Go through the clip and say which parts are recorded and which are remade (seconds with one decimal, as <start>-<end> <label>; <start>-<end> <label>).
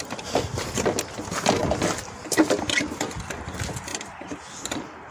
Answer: 0.0-3.9 recorded; 3.9-5.1 remade